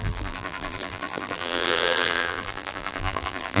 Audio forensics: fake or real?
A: fake